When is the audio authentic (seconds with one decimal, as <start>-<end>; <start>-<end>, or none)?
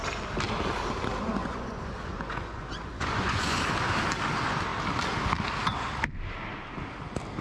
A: 0.0-1.4; 3.6-7.4